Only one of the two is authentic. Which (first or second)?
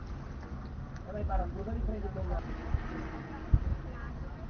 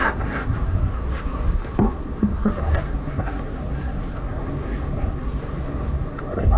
first